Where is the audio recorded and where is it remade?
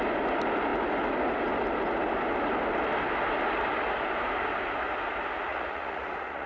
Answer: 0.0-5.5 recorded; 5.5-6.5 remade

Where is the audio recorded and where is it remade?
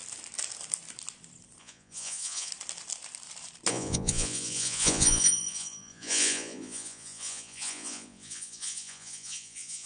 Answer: 0.0-1.6 recorded; 1.6-2.5 remade; 2.5-3.7 recorded; 3.7-9.9 remade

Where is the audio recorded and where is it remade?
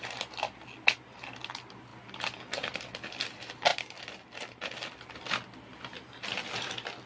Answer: 0.0-7.1 recorded